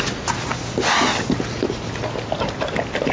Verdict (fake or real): real